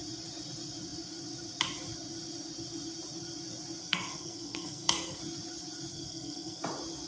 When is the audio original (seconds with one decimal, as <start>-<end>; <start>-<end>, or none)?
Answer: 0.0-3.8; 5.2-5.9; 6.6-7.1